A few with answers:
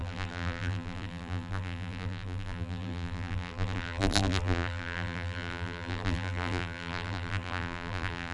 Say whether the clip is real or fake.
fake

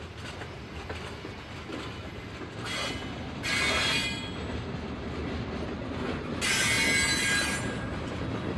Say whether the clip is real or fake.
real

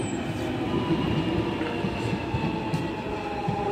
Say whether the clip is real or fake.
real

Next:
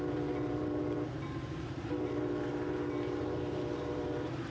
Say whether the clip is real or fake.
fake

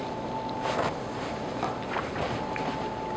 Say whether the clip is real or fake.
real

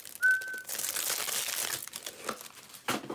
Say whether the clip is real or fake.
real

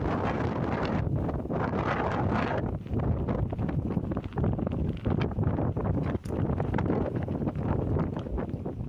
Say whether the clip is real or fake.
real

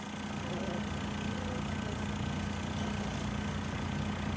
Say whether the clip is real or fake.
real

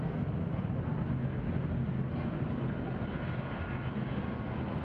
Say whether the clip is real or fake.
real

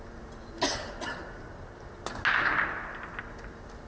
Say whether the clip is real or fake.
real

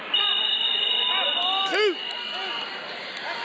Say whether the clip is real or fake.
real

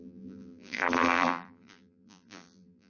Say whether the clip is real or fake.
fake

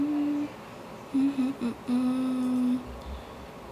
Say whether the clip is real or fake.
real